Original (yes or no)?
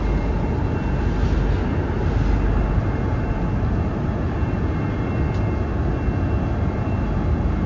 yes